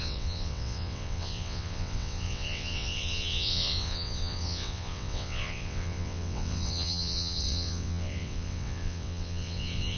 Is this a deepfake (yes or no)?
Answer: yes